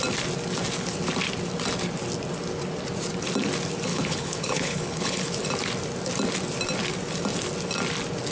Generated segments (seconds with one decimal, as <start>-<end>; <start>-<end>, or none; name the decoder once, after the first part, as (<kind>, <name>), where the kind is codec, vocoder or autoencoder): 3.9-5.2 (codec, HILCodec)